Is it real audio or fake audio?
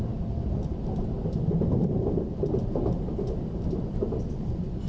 real